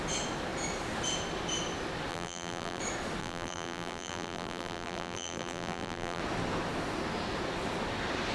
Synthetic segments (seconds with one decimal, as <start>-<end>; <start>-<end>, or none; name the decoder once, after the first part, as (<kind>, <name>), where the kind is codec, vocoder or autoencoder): 2.1-2.8 (vocoder, BigVGAN v2); 3.2-6.2